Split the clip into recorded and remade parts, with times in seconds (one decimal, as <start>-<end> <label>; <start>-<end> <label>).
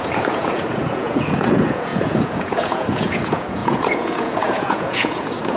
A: 0.0-5.6 remade